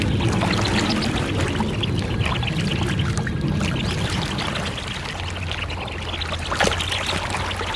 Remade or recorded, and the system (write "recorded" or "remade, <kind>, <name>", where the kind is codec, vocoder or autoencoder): recorded